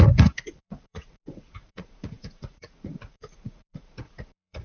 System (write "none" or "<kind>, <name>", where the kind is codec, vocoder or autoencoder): vocoder, Vocos